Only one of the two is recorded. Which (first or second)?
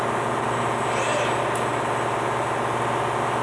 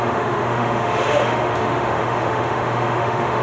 first